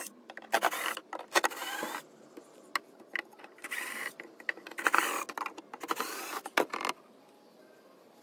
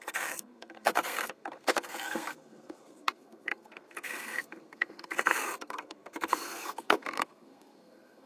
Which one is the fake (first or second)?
second